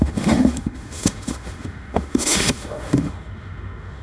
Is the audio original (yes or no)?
no